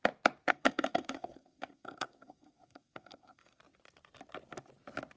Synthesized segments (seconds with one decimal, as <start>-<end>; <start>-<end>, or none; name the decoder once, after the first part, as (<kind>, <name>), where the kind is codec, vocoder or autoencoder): 0.5-3.6 (codec, SNAC)